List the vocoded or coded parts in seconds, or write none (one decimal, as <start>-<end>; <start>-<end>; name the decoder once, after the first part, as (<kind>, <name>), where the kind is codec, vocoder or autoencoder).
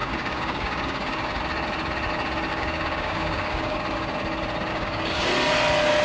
0.0-1.4 (codec, DAC); 2.5-3.8; 4.7-5.3